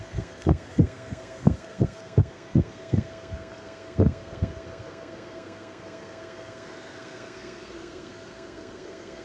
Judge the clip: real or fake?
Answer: fake